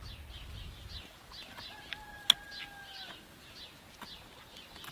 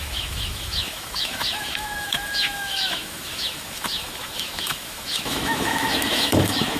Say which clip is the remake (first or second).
second